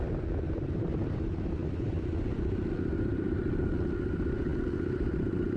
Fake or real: real